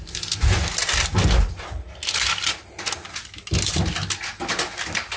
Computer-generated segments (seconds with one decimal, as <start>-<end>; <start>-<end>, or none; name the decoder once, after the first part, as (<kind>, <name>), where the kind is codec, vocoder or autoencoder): none

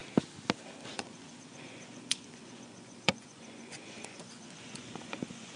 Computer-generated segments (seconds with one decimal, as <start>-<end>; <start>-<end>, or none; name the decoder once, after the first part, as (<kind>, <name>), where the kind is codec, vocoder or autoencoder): 0.9-5.6 (vocoder, Vocos)